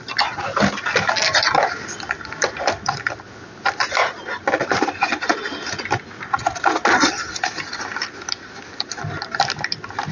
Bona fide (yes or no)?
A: yes